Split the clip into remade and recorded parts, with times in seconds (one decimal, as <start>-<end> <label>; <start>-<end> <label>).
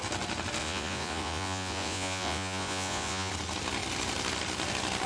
0.0-0.6 recorded; 0.6-3.3 remade; 3.3-5.1 recorded